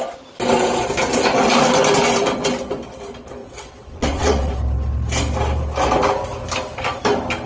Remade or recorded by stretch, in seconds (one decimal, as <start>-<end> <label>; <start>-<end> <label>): 0.0-3.4 recorded; 3.4-4.5 remade; 4.5-7.5 recorded